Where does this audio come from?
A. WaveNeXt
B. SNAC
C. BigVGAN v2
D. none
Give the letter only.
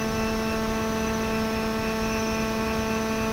D